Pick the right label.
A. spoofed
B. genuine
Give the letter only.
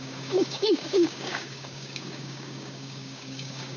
A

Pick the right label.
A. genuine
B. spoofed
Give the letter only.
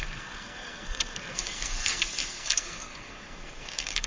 B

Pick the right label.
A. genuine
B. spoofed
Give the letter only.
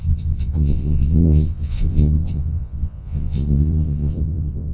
B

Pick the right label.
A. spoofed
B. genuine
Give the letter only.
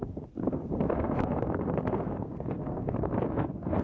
A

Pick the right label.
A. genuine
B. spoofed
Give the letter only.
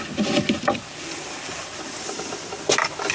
A